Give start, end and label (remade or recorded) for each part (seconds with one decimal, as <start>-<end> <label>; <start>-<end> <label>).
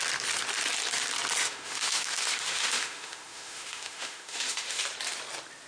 0.0-1.4 recorded; 1.4-4.8 remade; 4.8-5.7 recorded